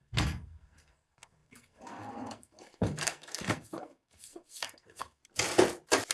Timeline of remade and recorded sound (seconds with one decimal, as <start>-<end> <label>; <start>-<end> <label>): 0.0-5.2 remade; 5.2-6.1 recorded